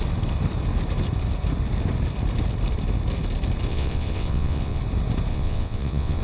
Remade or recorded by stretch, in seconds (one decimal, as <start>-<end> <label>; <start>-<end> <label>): 0.0-3.7 recorded; 3.7-4.8 remade; 4.8-5.3 recorded; 5.3-6.2 remade